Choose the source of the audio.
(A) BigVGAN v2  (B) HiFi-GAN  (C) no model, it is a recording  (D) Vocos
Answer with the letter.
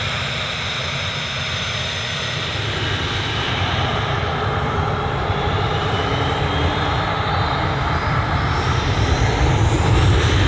A